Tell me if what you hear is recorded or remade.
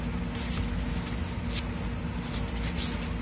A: recorded